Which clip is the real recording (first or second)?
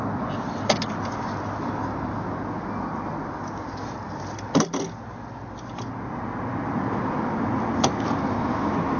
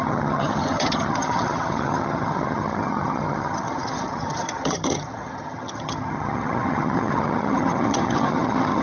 first